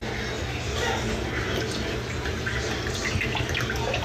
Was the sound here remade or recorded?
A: recorded